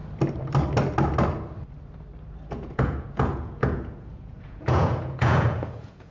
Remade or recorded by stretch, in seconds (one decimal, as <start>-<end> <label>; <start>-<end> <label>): 0.0-2.5 recorded; 2.5-6.1 remade